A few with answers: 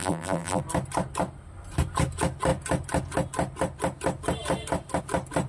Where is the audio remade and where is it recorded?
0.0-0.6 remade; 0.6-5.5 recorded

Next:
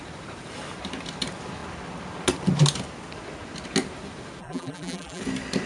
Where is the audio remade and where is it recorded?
0.0-4.4 recorded; 4.4-5.2 remade; 5.2-5.7 recorded

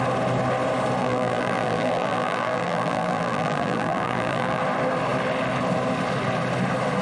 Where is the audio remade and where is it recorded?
0.0-1.0 recorded; 1.0-4.6 remade; 4.6-7.0 recorded

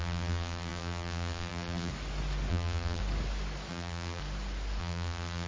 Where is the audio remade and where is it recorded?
0.0-1.9 remade; 1.9-2.5 recorded; 2.5-3.0 remade; 3.0-3.7 recorded; 3.7-4.2 remade; 4.2-4.8 recorded; 4.8-5.5 remade

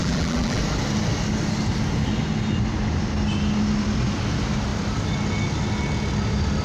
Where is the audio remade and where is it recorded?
0.0-0.6 remade; 0.6-6.6 recorded

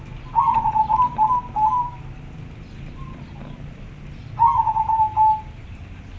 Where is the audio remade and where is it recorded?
0.0-6.2 recorded

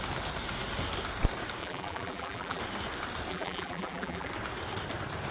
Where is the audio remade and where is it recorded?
0.0-1.6 recorded; 1.6-2.6 remade; 2.6-3.3 recorded; 3.3-4.3 remade; 4.3-5.3 recorded